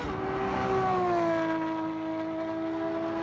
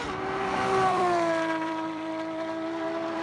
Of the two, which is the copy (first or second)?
second